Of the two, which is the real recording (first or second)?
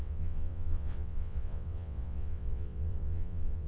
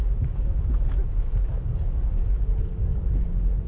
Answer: second